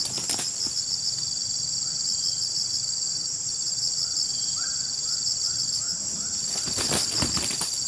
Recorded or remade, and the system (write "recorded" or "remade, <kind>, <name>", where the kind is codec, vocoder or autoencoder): recorded